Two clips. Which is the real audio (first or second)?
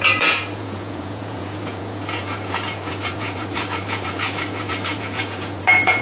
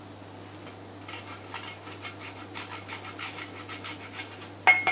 second